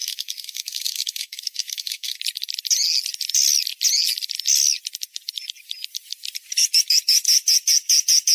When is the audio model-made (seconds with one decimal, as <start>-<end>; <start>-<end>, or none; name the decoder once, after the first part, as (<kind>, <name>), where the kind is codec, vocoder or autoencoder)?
0.0-2.2 (codec, SNAC)